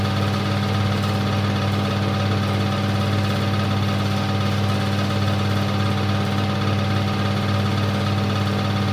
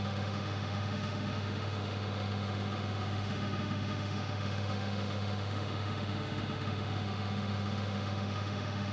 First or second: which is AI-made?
second